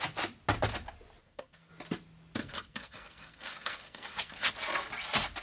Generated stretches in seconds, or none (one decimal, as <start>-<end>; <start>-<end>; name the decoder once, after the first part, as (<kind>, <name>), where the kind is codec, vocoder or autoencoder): 1.2-1.7 (codec, SNAC); 2.4-4.5